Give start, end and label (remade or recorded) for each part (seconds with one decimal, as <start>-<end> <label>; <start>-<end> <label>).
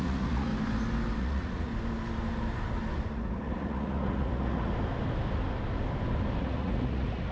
0.0-0.5 remade; 0.5-1.2 recorded; 1.2-1.7 remade; 1.7-3.1 recorded; 3.1-4.7 remade; 4.7-6.4 recorded; 6.4-7.3 remade